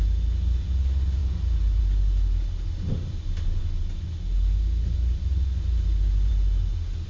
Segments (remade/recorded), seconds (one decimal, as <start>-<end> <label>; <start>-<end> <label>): 0.0-7.1 recorded